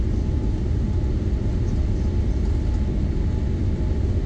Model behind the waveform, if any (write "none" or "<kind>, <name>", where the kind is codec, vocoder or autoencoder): none